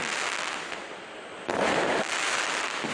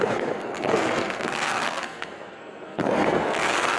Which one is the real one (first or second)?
first